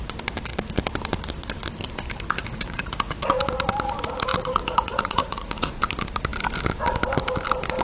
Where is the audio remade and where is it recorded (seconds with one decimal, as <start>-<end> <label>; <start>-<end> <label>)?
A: 0.0-2.4 recorded; 2.4-3.3 remade; 3.3-4.3 recorded; 4.3-5.7 remade; 5.7-7.8 recorded